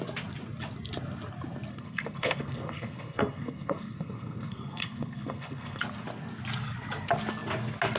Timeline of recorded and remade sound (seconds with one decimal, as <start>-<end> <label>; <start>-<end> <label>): 0.0-1.7 recorded; 1.7-5.8 remade; 5.8-8.0 recorded